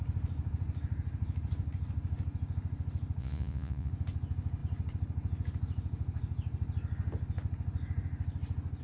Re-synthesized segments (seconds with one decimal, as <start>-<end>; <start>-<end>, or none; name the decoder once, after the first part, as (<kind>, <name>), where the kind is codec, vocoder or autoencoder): 3.2-3.9 (vocoder, Vocos)